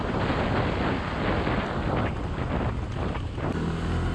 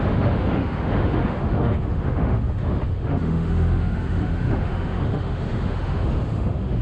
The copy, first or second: second